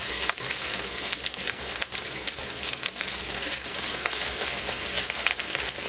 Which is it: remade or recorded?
remade